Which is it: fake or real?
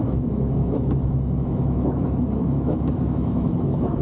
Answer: fake